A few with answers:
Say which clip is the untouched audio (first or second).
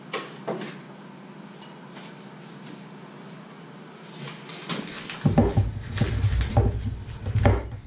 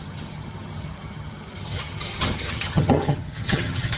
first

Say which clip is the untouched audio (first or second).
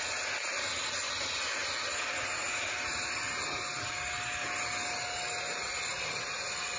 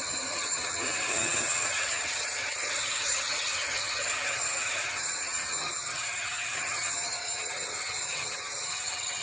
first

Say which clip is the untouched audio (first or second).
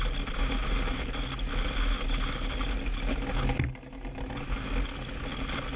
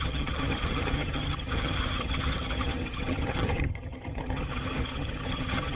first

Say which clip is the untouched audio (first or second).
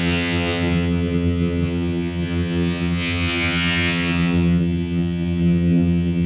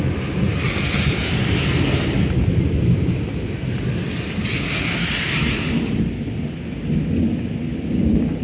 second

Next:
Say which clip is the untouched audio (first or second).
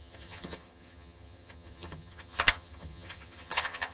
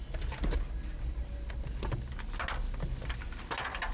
second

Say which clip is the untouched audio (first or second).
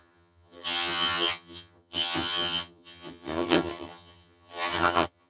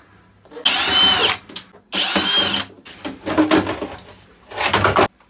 second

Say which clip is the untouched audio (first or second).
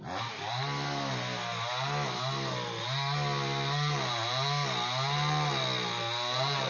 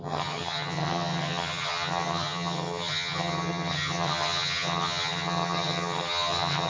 first